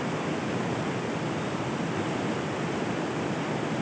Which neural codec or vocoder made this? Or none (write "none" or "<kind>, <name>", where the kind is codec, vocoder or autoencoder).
none